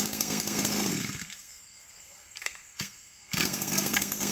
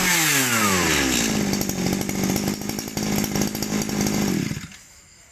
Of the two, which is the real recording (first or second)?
second